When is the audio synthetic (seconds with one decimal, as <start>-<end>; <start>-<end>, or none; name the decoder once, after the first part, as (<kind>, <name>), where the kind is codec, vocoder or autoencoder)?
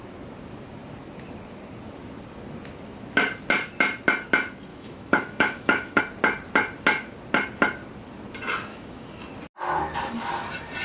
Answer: 4.7-6.0 (autoencoder, DAC-VAE); 8.7-9.2